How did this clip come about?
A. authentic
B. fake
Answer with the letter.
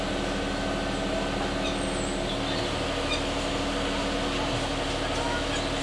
A